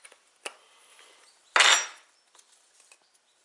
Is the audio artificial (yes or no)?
no